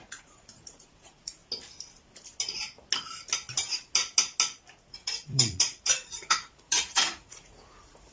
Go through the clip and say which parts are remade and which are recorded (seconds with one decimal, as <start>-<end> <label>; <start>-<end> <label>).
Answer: 0.0-1.4 remade; 1.4-4.8 recorded; 4.8-8.1 remade